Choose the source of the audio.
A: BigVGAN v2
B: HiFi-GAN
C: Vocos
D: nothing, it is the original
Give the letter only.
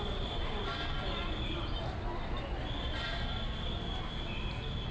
D